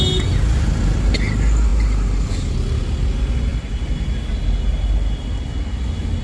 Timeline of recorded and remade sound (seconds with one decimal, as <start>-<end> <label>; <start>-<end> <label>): 0.0-6.2 recorded